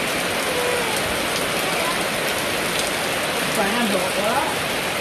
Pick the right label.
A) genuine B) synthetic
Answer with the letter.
A